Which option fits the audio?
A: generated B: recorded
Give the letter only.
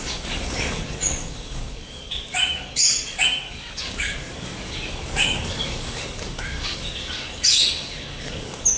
A